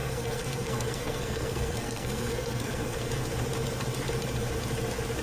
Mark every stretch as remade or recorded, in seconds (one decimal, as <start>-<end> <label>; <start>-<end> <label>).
0.0-3.1 remade; 3.1-5.2 recorded

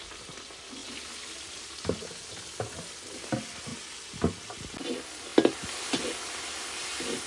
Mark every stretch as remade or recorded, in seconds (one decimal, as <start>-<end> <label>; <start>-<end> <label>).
0.0-7.3 recorded

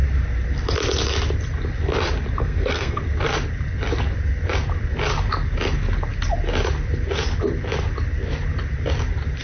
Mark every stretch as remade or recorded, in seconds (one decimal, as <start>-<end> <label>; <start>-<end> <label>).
0.0-2.4 recorded; 2.4-3.0 remade; 3.0-9.4 recorded